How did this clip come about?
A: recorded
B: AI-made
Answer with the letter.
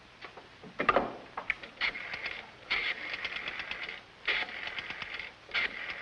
A